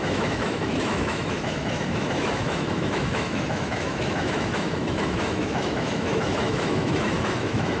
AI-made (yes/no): yes